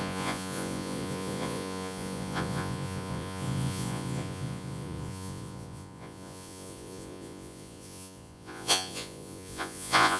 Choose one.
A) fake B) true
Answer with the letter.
A